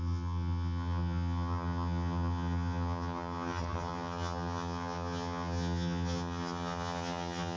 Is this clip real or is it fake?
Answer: fake